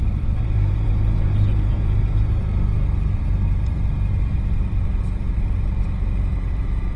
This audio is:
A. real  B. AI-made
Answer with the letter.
B